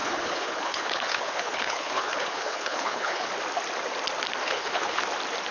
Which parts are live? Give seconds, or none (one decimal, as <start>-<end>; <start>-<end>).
3.3-4.4; 5.0-5.5